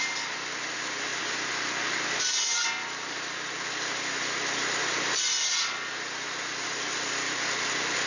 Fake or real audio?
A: real